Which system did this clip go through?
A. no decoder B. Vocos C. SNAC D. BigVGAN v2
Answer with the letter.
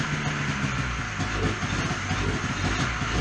A